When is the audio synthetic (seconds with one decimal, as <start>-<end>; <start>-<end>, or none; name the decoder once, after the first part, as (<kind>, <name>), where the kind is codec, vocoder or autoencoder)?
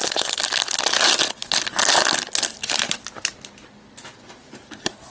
none